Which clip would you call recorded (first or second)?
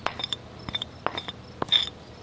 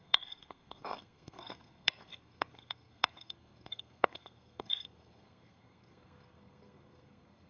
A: first